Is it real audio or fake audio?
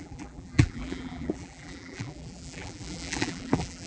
fake